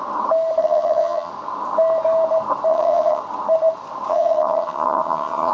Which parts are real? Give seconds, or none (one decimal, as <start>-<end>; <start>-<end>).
0.0-0.6; 1.3-2.7; 3.2-4.1